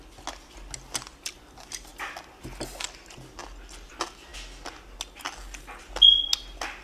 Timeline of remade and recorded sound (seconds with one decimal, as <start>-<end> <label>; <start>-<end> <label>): 0.0-6.8 recorded

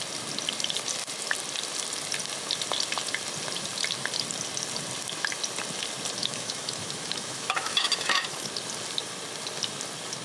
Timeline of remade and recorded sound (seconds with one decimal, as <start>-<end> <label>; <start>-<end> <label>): 0.0-6.2 recorded; 6.2-8.5 remade; 8.5-10.2 recorded

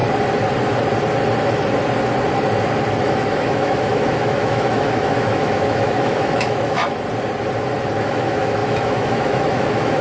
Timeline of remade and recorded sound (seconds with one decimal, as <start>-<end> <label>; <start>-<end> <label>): 0.0-3.0 recorded; 3.0-6.8 remade; 6.8-8.0 recorded; 8.0-10.0 remade

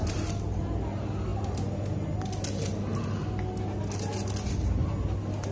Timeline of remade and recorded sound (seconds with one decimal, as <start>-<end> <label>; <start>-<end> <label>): 0.0-5.5 recorded